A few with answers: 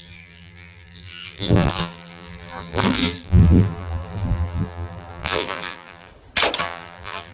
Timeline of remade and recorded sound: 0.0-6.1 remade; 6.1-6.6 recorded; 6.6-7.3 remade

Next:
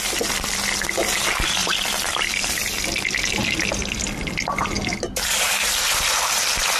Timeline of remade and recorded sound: 0.0-1.6 recorded; 1.6-2.7 remade; 2.7-3.4 recorded; 3.4-4.6 remade; 4.6-6.8 recorded

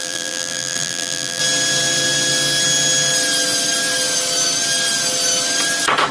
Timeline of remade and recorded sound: 0.0-1.4 remade; 1.4-6.1 recorded

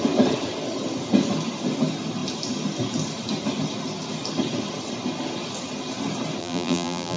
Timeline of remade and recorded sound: 0.0-6.4 recorded; 6.4-7.2 remade